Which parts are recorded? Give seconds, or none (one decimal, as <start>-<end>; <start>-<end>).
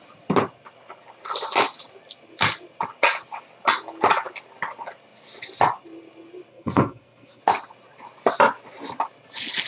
0.0-6.5; 7.4-9.7